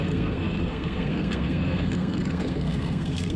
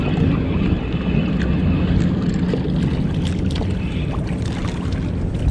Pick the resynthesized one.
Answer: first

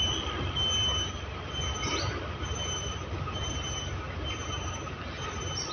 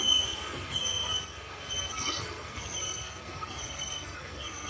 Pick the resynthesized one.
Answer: second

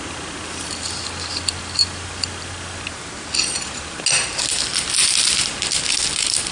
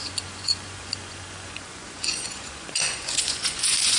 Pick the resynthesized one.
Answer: second